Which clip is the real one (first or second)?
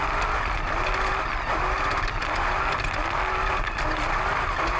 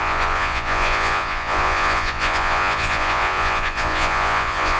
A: first